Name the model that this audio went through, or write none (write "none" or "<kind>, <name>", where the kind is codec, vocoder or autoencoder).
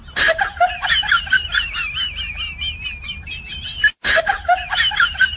vocoder, BigVGAN v2